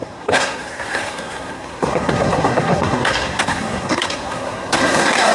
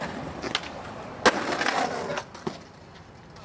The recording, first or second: second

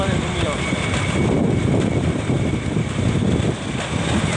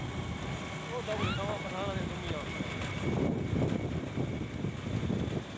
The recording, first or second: second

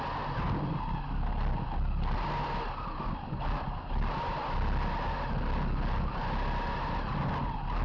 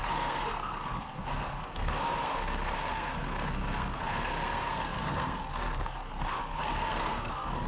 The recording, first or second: first